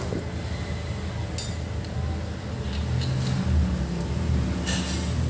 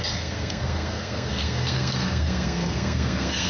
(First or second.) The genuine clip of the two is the first